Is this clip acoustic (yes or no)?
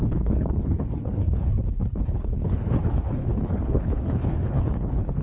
no